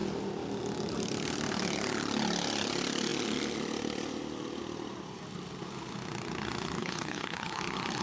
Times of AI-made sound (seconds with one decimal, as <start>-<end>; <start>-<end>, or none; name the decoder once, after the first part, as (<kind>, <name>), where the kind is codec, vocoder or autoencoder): 6.8-7.6 (codec, HILCodec)